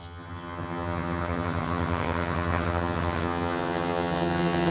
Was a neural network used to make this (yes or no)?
yes